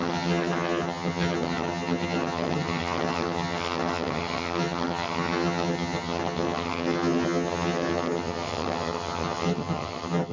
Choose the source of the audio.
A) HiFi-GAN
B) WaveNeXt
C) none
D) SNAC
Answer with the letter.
A